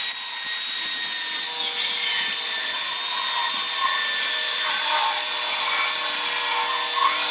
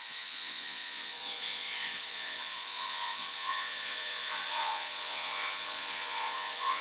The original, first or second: first